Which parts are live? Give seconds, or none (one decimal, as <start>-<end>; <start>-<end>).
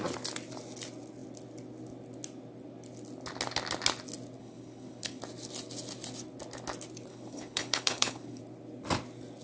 0.0-4.4; 5.2-7.1; 8.4-9.4